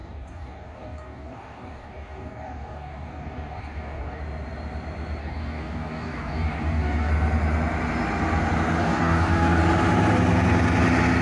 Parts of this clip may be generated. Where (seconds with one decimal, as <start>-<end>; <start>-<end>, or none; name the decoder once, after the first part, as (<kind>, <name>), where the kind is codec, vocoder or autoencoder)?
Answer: 0.0-4.2 (codec, DAC); 5.2-7.1; 8.8-9.6